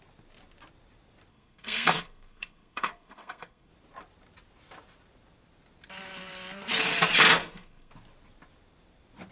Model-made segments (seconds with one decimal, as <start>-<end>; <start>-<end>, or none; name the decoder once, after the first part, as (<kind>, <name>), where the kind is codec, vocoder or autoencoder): 1.3-3.7 (codec, SNAC); 7.4-7.9